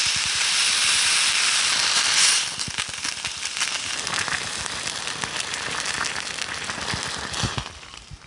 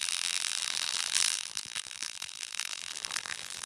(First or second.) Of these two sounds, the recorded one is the first